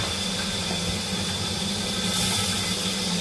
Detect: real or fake real